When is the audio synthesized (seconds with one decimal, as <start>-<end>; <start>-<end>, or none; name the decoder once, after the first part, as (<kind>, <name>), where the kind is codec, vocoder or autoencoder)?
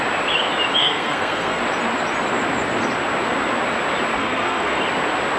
0.8-1.6 (codec, SNAC); 4.2-4.8